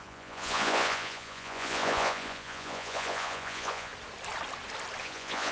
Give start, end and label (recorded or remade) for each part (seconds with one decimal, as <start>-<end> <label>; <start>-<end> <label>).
0.0-3.9 remade; 3.9-5.0 recorded; 5.0-5.5 remade